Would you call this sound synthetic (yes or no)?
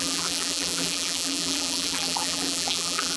yes